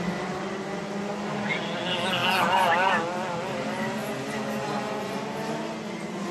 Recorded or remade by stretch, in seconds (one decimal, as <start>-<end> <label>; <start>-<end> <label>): 0.0-6.3 recorded